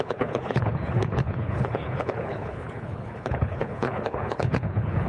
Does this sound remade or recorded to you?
remade